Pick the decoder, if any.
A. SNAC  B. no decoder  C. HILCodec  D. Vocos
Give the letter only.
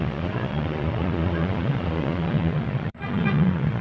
D